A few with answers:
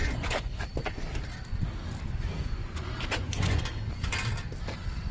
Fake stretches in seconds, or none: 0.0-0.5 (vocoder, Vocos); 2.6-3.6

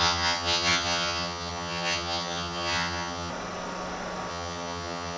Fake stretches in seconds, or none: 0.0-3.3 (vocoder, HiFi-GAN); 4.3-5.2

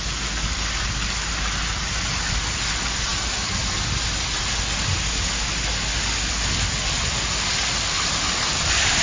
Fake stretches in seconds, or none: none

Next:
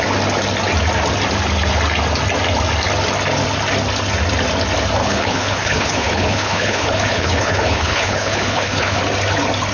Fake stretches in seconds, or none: 5.0-9.0 (codec, HILCodec)